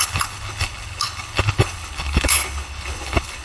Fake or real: fake